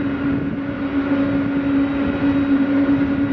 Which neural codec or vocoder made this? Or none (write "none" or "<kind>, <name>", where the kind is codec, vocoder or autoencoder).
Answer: none